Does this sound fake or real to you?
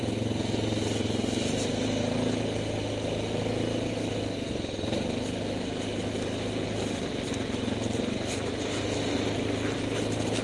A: real